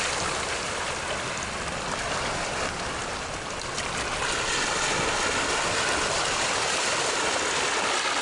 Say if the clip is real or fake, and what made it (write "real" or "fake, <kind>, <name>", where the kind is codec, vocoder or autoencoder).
real